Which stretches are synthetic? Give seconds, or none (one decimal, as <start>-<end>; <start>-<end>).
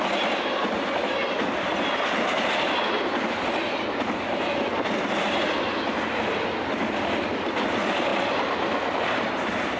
none